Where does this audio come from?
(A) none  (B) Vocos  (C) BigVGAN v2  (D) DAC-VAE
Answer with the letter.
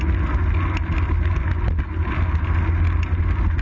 A